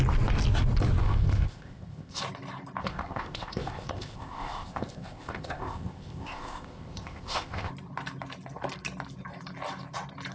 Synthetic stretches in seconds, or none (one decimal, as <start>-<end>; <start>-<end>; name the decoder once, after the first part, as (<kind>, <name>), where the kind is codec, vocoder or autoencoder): 1.0-2.2 (codec, ZipCodec); 2.8-7.7